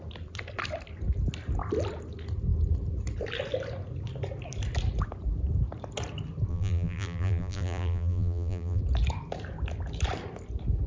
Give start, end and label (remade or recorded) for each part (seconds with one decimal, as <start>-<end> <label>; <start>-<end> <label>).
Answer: 0.0-6.5 recorded; 6.5-8.8 remade; 8.8-10.9 recorded